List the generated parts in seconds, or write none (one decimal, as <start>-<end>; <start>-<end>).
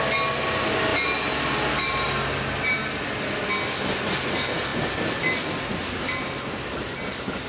none